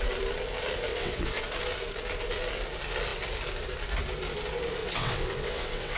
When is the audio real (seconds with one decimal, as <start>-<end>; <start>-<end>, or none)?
0.0-0.9; 1.4-4.8